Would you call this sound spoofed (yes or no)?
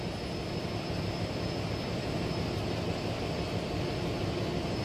no